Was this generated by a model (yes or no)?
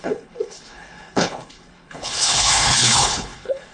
yes